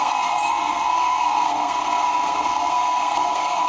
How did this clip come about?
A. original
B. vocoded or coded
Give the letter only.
B